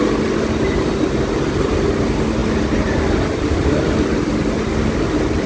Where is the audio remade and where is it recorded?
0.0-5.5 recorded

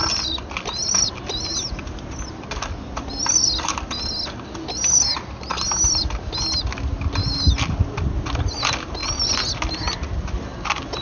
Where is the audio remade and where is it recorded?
0.0-11.0 recorded